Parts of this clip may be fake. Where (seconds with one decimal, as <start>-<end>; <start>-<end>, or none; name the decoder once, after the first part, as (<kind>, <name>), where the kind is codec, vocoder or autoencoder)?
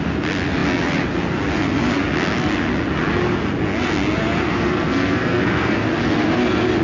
4.5-5.8 (codec, SNAC)